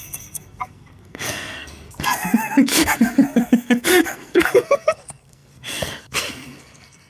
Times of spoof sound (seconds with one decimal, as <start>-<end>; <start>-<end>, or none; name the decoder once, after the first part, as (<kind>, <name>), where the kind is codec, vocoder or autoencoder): 0.0-7.1 (codec, SNAC)